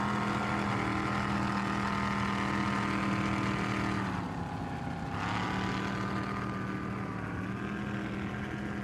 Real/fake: real